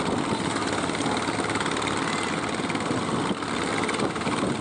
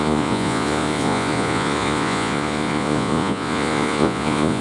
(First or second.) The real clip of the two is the first